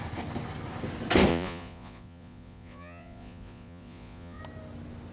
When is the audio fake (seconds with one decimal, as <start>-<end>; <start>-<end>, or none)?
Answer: 1.3-4.4